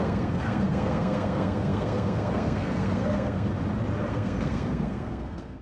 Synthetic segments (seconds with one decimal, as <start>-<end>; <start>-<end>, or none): 0.0-3.5; 4.1-5.6